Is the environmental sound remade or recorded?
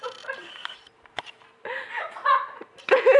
remade